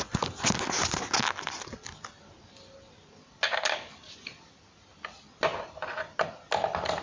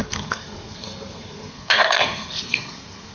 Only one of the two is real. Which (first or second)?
first